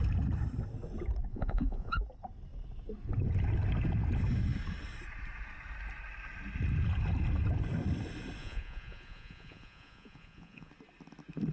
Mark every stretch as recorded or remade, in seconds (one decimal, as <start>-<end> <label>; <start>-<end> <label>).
0.0-1.3 recorded; 1.3-2.0 remade; 2.0-8.4 recorded; 8.4-10.7 remade; 10.7-11.5 recorded